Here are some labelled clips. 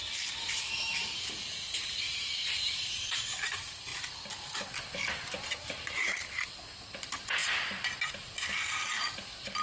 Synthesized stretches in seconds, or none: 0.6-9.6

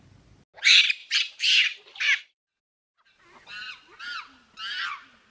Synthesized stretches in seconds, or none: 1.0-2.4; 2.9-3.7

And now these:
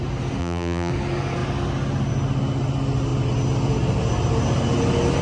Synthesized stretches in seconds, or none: 0.4-0.9

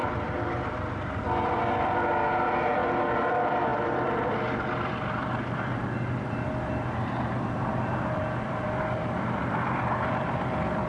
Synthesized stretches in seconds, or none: 0.0-2.8; 3.3-10.9

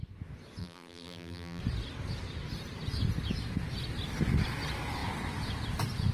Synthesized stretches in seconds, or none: 0.6-1.6